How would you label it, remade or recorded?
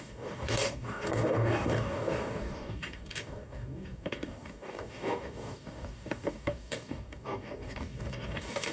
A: remade